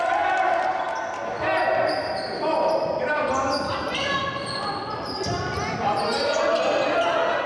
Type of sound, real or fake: real